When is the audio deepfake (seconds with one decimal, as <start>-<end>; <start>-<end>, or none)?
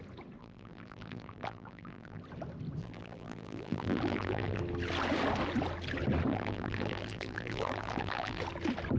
0.4-2.2; 2.8-4.6; 6.3-8.4